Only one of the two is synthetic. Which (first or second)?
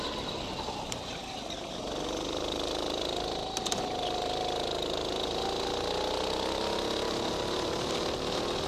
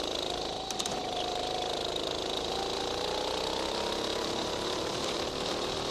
second